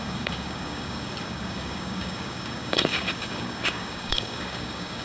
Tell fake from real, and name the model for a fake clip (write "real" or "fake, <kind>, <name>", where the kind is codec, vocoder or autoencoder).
fake, codec, DAC